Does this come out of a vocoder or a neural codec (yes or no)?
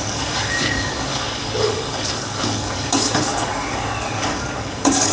yes